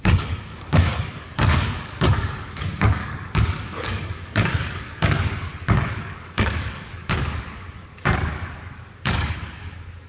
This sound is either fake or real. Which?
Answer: fake